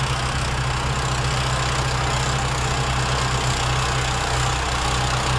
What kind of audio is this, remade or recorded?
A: recorded